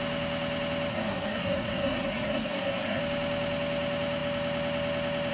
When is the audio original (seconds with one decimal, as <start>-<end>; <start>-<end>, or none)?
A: 0.0-0.9; 3.0-5.3